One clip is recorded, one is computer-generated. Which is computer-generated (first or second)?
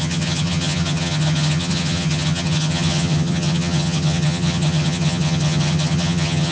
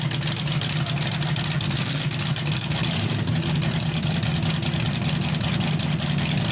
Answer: first